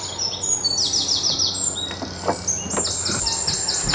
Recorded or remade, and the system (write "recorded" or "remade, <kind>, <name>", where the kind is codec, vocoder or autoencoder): recorded